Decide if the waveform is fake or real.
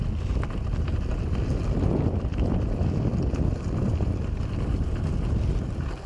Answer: real